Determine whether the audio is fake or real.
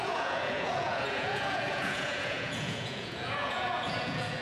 fake